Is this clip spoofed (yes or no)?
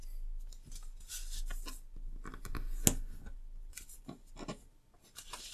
no